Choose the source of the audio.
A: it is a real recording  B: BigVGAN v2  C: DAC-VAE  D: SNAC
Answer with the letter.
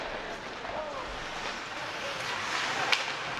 A